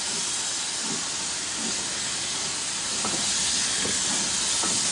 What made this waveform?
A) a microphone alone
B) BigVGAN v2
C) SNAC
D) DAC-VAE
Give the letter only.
A